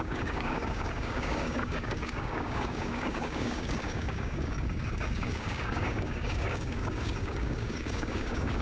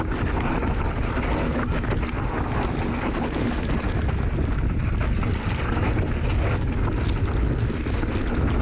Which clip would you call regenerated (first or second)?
first